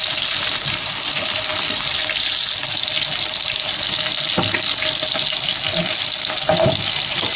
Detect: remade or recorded recorded